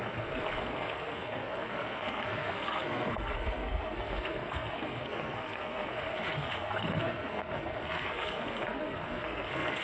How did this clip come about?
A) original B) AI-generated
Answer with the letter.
B